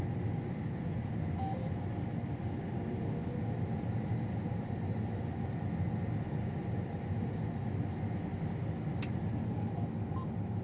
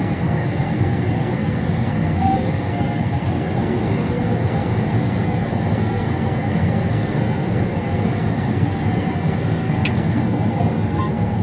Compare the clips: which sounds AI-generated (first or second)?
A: second